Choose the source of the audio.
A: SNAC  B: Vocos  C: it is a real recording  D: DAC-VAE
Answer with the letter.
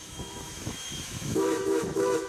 D